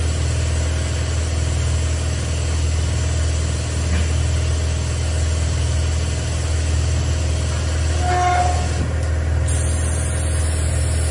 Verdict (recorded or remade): recorded